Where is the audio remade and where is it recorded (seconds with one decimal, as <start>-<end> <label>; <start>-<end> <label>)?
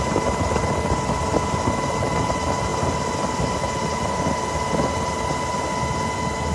0.0-6.5 recorded